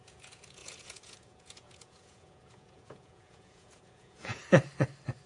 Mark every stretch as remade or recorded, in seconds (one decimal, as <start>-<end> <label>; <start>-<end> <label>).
0.0-4.4 remade; 4.4-5.3 recorded